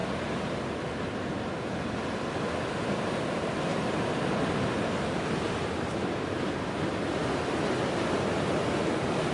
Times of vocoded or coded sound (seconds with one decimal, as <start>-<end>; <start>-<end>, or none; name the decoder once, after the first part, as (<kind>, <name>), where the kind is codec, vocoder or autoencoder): none